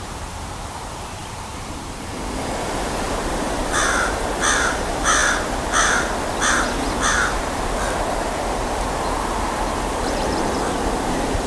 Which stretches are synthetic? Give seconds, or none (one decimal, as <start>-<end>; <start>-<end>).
0.0-3.6; 4.7-5.2; 9.9-11.5